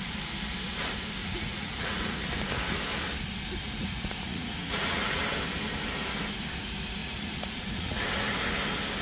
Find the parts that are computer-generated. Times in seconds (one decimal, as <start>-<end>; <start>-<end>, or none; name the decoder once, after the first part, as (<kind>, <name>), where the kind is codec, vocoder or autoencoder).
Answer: 1.2-2.2 (vocoder, Vocos); 3.6-5.2; 7.0-8.0